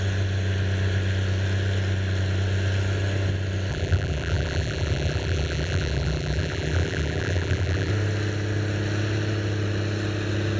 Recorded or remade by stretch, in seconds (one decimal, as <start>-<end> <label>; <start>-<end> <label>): 0.0-3.7 recorded; 3.7-7.9 remade; 7.9-10.6 recorded